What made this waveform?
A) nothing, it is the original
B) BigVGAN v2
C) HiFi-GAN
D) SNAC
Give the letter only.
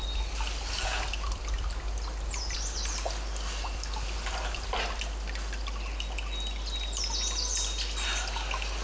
A